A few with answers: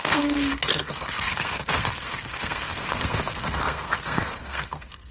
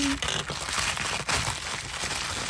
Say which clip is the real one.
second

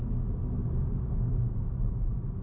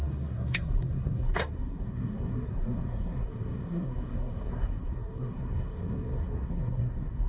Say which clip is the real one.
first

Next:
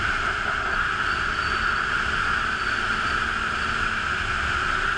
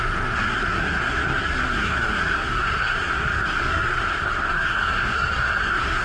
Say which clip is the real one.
first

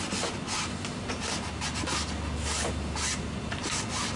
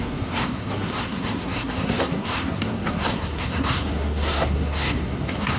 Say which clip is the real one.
first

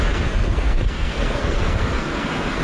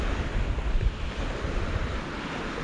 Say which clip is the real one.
second